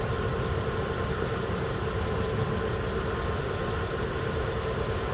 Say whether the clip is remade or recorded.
recorded